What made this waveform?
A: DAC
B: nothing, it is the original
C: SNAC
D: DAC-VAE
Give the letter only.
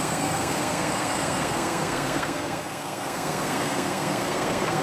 C